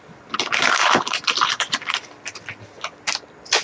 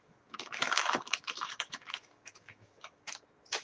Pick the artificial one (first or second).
second